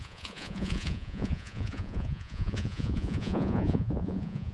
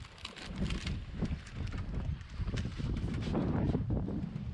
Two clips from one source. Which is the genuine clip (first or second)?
second